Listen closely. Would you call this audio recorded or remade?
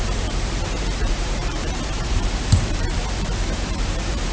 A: remade